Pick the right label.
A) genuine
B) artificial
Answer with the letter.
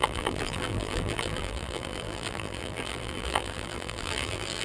B